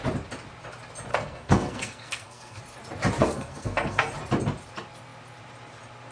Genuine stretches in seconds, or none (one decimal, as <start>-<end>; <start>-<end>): 0.0-1.1; 2.6-3.2; 4.1-6.1